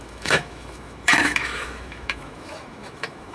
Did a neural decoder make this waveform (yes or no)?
yes